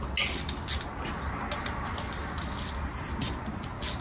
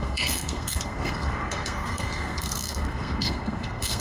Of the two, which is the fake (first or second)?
second